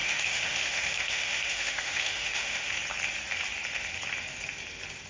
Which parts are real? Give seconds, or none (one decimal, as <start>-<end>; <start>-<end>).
2.8-5.1